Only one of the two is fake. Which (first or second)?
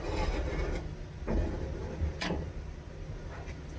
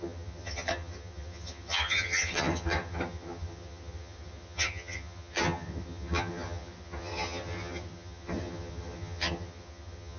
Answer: second